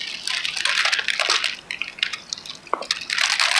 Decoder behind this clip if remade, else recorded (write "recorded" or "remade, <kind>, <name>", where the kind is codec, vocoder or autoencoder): recorded